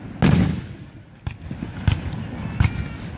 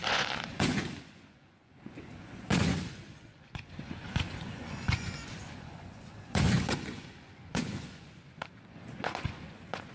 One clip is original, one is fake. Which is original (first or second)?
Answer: first